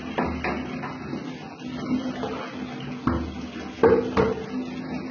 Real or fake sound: real